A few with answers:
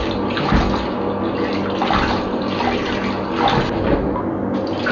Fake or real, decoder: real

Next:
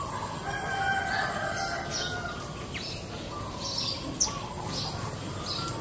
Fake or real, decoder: real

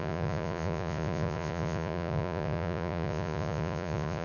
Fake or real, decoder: fake, vocoder, Vocos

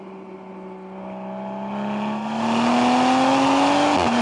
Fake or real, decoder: real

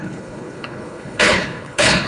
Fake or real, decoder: fake, codec, HILCodec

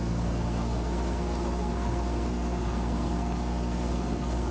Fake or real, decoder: fake, codec, SNAC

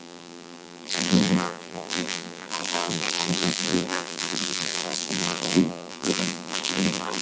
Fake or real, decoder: fake, vocoder, BigVGAN v2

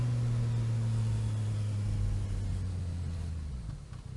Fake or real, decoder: real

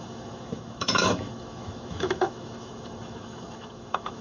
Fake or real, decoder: fake, autoencoder, DAC-VAE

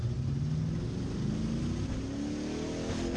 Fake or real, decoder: real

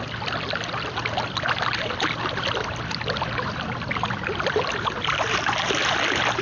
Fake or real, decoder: real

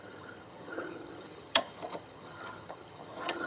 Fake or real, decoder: fake, vocoder, HiFi-GAN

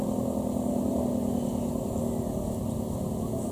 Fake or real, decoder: real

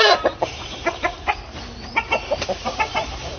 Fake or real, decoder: fake, vocoder, BigVGAN v2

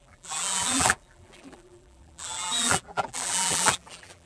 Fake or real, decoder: fake, vocoder, BigVGAN v2